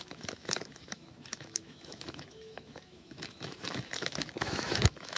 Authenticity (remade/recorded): remade